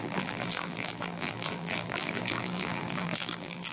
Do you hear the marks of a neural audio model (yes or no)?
yes